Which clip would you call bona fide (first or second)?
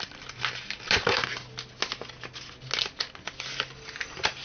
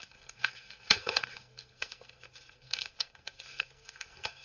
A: first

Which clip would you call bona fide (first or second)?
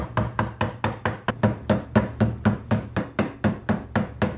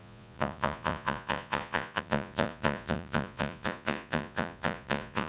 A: first